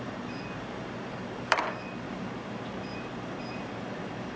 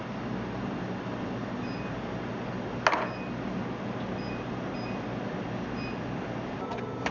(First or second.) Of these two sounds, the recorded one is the second